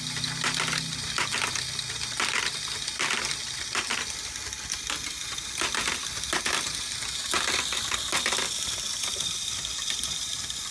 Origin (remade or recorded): recorded